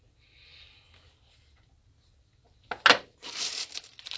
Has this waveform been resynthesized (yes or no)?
no